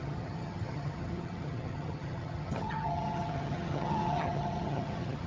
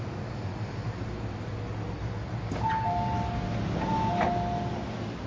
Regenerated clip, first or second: first